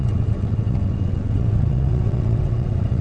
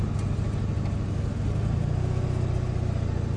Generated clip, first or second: first